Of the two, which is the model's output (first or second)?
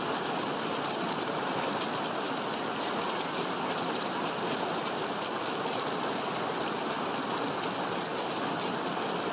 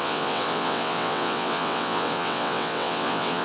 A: second